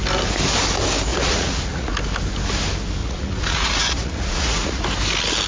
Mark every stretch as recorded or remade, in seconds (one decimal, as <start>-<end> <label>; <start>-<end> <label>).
0.0-1.1 recorded; 1.1-1.9 remade; 1.9-3.0 recorded; 3.0-4.8 remade; 4.8-5.5 recorded